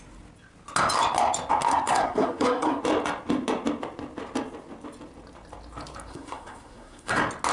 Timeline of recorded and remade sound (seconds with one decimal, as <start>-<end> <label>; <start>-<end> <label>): 0.0-1.7 recorded; 1.7-2.8 remade; 2.8-6.1 recorded; 6.1-7.1 remade; 7.1-7.5 recorded

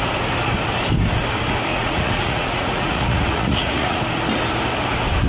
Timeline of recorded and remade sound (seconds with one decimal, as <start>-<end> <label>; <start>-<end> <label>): 0.0-1.7 recorded; 1.7-4.0 remade; 4.0-5.3 recorded

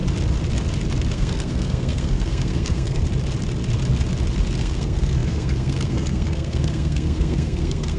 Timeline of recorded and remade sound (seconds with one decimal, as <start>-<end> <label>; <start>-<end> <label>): 0.0-1.1 recorded; 1.1-3.0 remade; 3.0-4.6 recorded; 4.6-8.0 remade

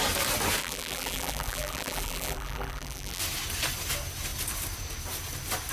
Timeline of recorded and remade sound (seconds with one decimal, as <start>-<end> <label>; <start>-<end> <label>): 0.0-0.6 recorded; 0.6-3.2 remade; 3.2-5.7 recorded

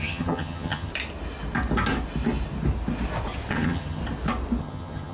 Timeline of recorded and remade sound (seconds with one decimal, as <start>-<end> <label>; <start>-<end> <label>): 0.0-0.9 remade; 0.9-3.5 recorded; 3.5-4.0 remade; 4.0-4.6 recorded; 4.6-5.1 remade

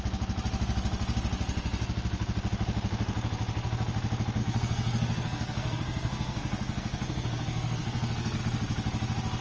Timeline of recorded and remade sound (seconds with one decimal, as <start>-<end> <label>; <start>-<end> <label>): 0.0-4.4 recorded; 4.4-8.4 remade; 8.4-9.4 recorded